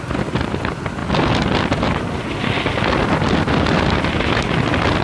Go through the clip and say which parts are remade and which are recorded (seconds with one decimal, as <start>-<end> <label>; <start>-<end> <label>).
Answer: 0.0-5.0 recorded